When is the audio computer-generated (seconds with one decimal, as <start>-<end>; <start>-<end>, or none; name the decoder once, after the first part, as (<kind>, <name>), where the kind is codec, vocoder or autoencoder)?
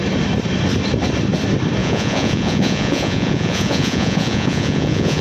1.8-5.2 (vocoder, Vocos)